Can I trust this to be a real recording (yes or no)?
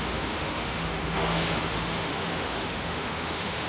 no